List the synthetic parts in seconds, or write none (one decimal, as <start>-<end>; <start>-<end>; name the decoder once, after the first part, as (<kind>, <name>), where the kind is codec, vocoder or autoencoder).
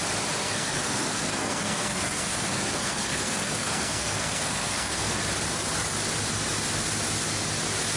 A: 0.4-5.2 (codec, SNAC)